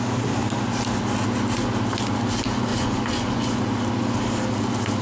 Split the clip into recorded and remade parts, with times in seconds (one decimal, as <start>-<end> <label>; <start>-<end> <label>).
0.0-2.7 recorded; 2.7-3.6 remade; 3.6-5.0 recorded